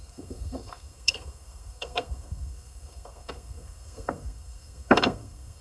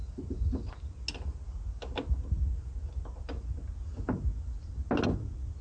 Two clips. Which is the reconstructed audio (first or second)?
first